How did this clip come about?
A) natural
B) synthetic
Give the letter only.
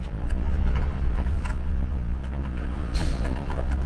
B